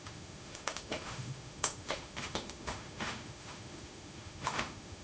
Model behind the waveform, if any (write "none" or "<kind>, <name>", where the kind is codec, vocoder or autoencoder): autoencoder, DAC-VAE